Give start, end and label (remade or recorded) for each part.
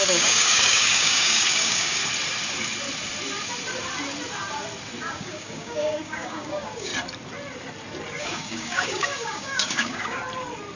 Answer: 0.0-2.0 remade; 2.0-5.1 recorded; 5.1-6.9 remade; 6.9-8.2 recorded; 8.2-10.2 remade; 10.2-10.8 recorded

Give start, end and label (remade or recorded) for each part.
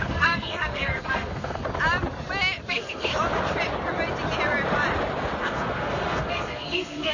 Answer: 0.0-1.6 remade; 1.6-2.7 recorded; 2.7-3.1 remade; 3.1-5.4 recorded; 5.4-7.1 remade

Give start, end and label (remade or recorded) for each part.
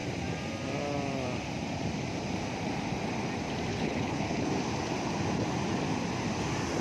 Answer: 0.0-3.7 recorded; 3.7-4.5 remade; 4.5-6.8 recorded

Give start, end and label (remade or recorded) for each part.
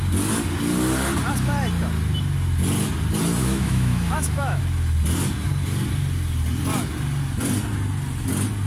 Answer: 0.0-3.4 recorded; 3.4-4.6 remade; 4.6-8.7 recorded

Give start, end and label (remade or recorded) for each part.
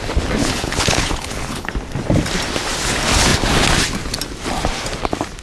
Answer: 0.0-0.4 recorded; 0.4-1.7 remade; 1.7-5.4 recorded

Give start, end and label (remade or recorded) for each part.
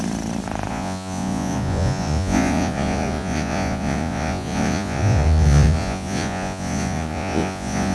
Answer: 0.0-0.7 recorded; 0.7-7.9 remade